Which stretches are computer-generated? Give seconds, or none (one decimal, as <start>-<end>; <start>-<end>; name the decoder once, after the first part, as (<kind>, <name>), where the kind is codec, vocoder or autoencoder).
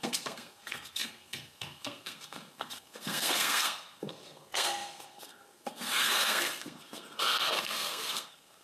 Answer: 0.0-8.6 (codec, SNAC)